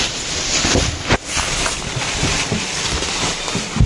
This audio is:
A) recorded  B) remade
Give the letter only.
A